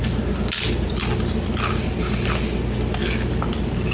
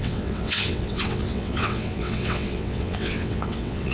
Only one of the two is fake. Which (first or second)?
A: second